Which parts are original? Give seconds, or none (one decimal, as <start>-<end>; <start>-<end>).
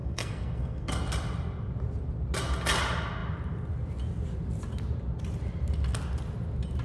0.9-6.8